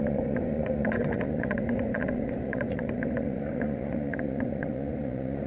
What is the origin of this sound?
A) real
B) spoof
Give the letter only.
B